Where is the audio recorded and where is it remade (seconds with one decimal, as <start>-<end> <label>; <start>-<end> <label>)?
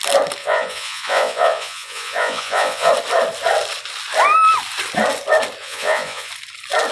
0.0-0.4 recorded; 0.4-2.9 remade; 2.9-5.6 recorded; 5.6-6.3 remade; 6.3-6.9 recorded